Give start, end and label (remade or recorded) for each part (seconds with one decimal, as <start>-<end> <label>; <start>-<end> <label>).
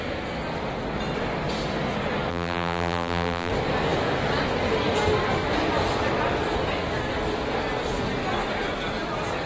0.0-2.3 recorded; 2.3-3.5 remade; 3.5-9.5 recorded